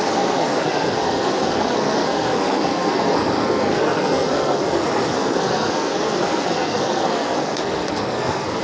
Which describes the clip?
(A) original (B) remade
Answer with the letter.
B